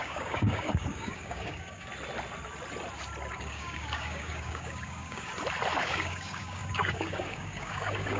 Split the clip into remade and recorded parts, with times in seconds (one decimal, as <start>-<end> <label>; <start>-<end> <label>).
0.0-1.9 remade; 1.9-3.3 recorded; 3.3-5.3 remade; 5.3-5.8 recorded; 5.8-8.2 remade